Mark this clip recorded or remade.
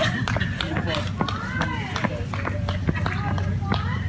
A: recorded